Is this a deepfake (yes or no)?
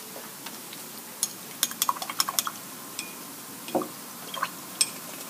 no